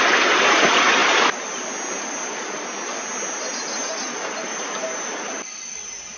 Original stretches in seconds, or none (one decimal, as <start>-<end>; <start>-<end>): 0.0-6.2